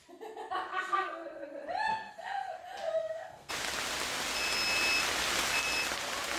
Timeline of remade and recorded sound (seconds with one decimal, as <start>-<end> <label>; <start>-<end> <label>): 0.0-0.7 recorded; 0.7-1.5 remade; 1.5-1.9 recorded; 1.9-2.6 remade; 2.6-3.0 recorded; 3.0-3.5 remade; 3.5-6.4 recorded